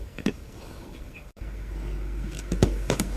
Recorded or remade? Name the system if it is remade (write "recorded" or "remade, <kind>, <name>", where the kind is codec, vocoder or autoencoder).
remade, codec, SNAC